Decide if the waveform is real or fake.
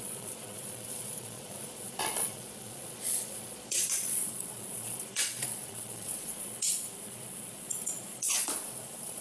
fake